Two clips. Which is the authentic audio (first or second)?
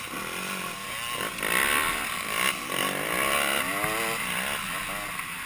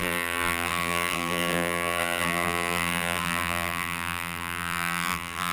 first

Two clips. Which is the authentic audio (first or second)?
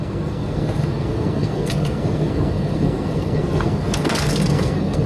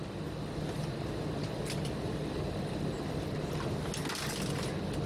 second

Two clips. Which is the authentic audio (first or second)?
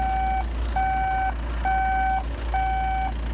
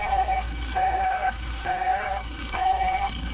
first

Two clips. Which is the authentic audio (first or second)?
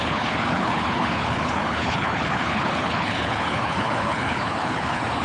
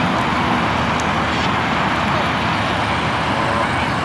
second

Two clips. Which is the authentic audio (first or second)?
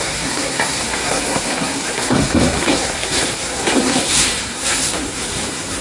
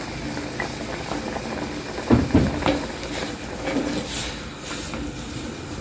second